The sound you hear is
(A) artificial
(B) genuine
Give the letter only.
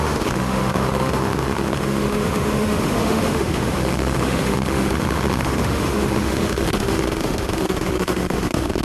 A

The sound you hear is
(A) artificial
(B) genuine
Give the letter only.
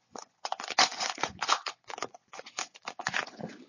A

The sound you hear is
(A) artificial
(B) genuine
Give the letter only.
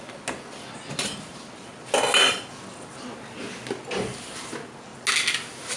B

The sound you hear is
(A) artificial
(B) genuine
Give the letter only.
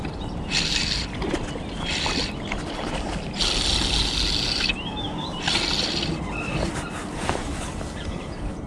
B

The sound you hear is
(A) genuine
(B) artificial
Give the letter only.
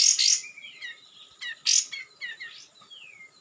A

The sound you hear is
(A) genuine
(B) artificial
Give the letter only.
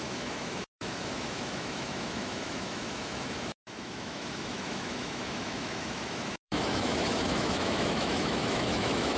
B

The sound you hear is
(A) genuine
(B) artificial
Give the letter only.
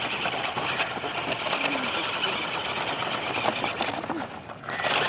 A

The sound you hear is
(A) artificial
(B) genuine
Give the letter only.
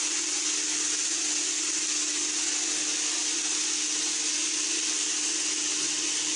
B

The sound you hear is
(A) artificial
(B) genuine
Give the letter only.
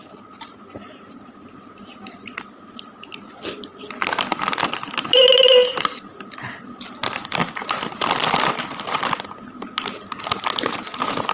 B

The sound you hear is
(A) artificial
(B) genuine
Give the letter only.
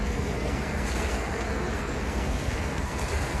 A